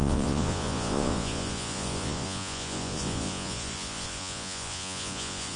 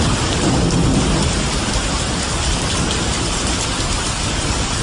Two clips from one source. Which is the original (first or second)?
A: second